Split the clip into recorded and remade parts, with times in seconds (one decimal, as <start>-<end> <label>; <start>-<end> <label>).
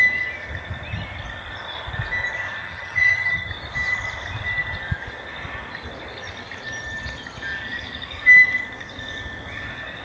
0.0-2.6 recorded; 2.6-3.5 remade; 3.5-10.0 recorded